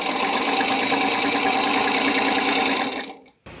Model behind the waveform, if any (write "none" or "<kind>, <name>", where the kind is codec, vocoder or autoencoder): none